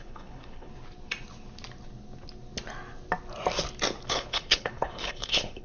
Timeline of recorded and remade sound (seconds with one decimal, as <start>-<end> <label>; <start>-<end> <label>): 0.0-0.7 remade; 0.7-4.1 recorded; 4.1-5.6 remade